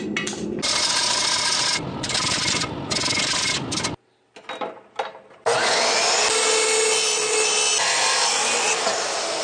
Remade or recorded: recorded